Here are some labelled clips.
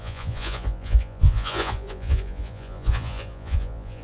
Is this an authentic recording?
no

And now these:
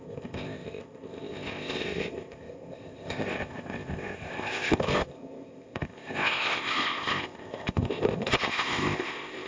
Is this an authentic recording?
no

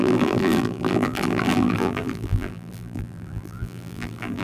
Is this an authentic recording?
no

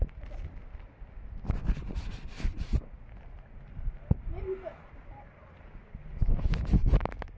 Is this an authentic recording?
yes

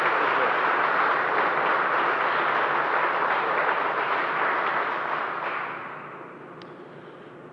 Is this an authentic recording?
yes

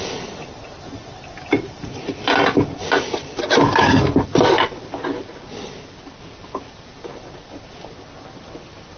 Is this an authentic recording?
yes